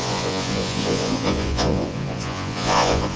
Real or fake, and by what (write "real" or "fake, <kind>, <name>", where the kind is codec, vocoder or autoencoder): fake, vocoder, Vocos